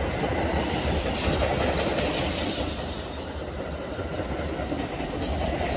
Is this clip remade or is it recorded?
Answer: recorded